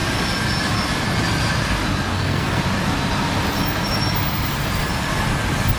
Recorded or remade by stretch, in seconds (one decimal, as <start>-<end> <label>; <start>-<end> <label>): 0.0-2.1 recorded; 2.1-2.6 remade; 2.6-5.8 recorded